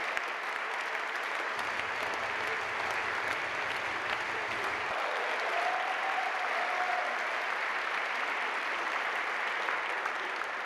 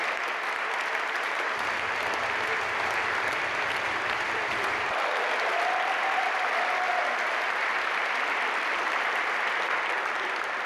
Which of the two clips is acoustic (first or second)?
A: first